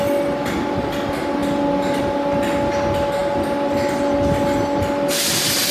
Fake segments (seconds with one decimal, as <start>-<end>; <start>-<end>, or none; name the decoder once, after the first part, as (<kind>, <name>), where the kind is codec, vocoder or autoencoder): none